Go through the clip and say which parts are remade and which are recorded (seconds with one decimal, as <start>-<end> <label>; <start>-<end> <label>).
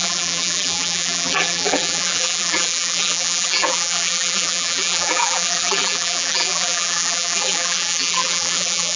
0.0-9.0 remade